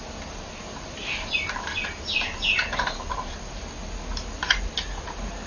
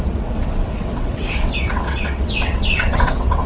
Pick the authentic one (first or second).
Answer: first